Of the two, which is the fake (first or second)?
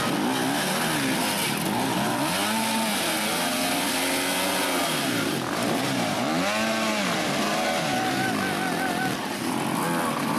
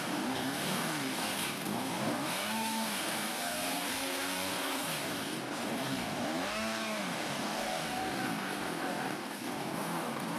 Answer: second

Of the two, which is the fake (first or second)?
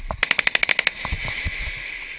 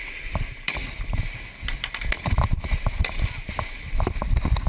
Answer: second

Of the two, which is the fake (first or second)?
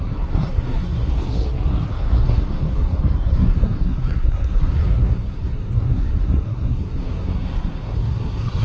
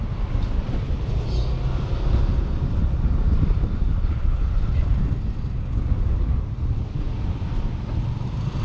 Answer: first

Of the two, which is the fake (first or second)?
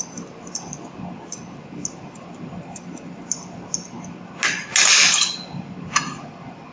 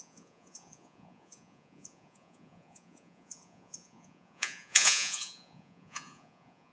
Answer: second